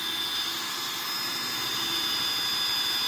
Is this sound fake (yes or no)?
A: no